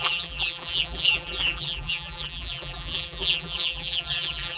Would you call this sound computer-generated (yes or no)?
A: yes